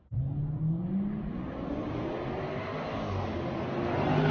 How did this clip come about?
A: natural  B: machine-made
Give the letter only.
A